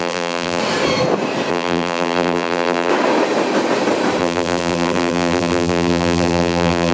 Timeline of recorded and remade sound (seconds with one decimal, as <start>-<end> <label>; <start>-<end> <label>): 0.0-0.6 remade; 0.6-1.5 recorded; 1.5-2.9 remade; 2.9-4.2 recorded; 4.2-6.9 remade